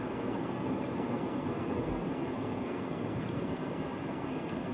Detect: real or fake fake